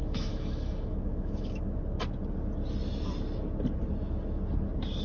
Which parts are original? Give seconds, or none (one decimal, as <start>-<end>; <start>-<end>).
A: 1.8-5.0